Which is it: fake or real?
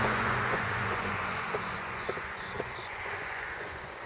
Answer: fake